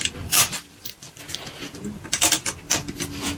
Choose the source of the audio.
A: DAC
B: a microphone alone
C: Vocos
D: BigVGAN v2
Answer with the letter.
D